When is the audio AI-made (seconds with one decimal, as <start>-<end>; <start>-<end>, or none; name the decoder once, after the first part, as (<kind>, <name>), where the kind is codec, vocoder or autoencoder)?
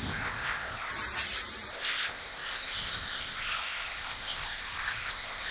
0.0-0.9 (codec, ZipCodec); 1.7-5.5